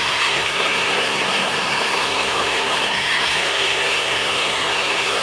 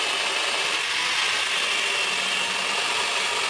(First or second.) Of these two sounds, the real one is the second